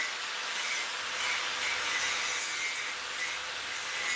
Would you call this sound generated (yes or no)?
no